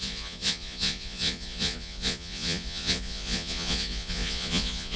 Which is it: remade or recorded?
remade